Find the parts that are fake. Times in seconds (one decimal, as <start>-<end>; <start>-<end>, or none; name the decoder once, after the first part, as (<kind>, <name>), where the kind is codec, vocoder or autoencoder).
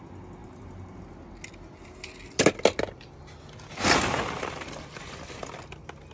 0.4-1.0 (vocoder, BigVGAN v2)